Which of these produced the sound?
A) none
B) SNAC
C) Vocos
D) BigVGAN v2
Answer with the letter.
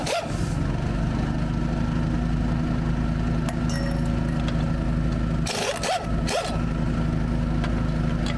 A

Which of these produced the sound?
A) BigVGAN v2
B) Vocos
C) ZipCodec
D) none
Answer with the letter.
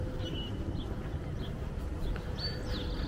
D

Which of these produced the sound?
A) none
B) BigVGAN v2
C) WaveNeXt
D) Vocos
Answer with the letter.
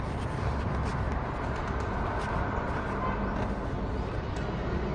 A